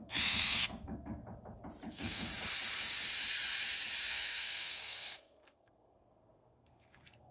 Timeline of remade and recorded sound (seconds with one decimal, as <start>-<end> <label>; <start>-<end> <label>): 0.0-1.2 remade; 1.2-1.9 recorded; 1.9-2.3 remade; 2.3-4.1 recorded; 4.1-7.3 remade